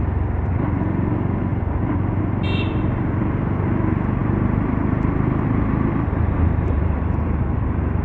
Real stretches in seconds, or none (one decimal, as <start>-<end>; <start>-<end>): 0.0-4.2; 7.4-8.0